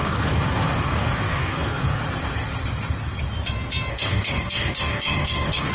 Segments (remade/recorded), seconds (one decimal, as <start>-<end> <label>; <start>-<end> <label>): 0.0-2.0 remade; 2.0-3.9 recorded; 3.9-5.7 remade